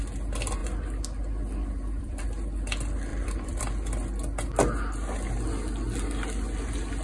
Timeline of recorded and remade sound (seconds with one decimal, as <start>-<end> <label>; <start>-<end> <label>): 0.0-0.6 recorded; 0.6-2.2 remade; 2.2-3.1 recorded; 3.1-3.6 remade; 3.6-7.0 recorded

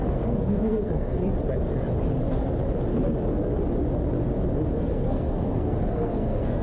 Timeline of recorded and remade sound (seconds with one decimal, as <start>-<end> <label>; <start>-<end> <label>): 0.0-1.2 remade; 1.2-4.7 recorded; 4.7-6.6 remade